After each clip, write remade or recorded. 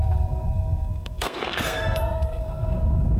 remade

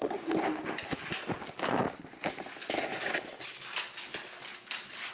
recorded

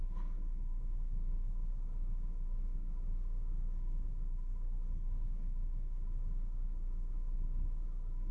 remade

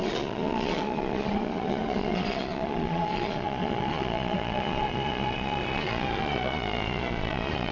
remade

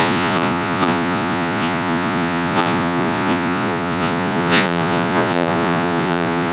remade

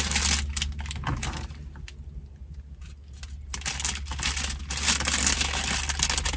recorded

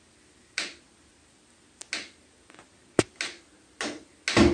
recorded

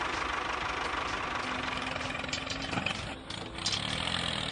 recorded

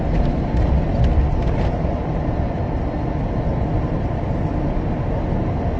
recorded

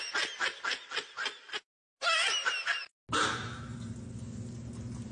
recorded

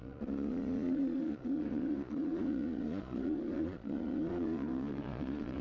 remade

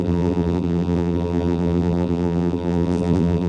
remade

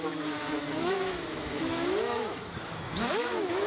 remade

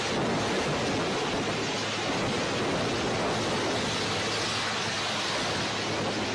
recorded